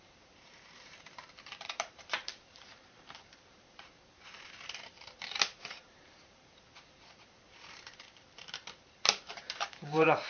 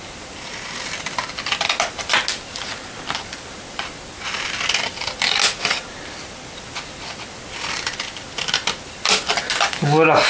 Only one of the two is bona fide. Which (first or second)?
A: second